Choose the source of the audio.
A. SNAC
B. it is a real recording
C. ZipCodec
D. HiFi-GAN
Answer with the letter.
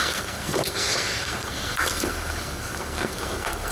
A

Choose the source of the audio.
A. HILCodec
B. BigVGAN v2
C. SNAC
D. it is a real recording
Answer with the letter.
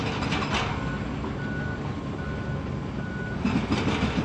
D